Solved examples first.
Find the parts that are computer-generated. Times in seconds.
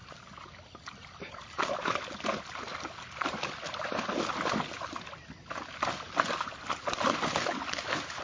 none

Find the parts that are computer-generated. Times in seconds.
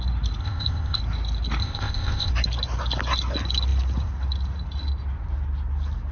0.4-1.0 (codec, ZipCodec); 1.6-2.3